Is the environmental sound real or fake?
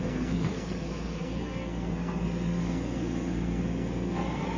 fake